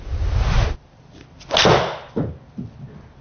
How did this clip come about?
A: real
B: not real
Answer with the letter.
A